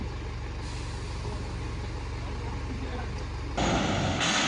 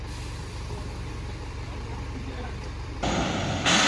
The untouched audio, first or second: first